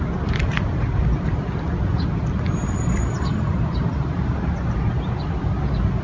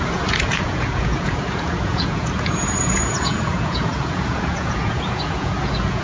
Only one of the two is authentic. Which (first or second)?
first